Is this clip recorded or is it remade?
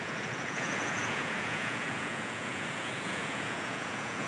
remade